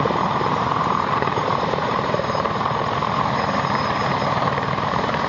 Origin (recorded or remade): remade